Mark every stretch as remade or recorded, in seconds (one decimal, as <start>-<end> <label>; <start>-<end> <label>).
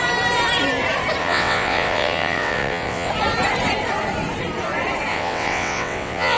0.0-1.2 recorded; 1.2-3.1 remade; 3.1-5.1 recorded; 5.1-6.4 remade